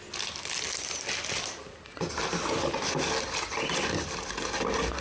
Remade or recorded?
recorded